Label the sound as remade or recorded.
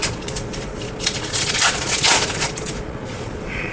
remade